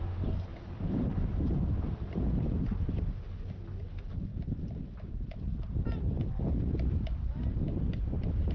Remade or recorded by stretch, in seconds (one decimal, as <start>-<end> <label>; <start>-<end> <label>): 0.0-0.5 recorded; 0.5-3.0 remade; 3.0-4.3 recorded; 4.3-8.5 remade